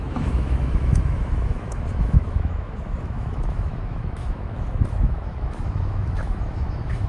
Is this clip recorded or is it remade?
remade